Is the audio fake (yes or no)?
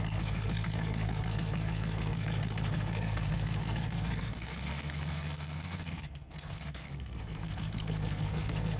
yes